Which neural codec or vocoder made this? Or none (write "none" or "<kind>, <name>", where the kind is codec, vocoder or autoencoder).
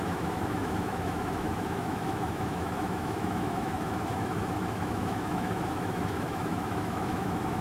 autoencoder, DAC-VAE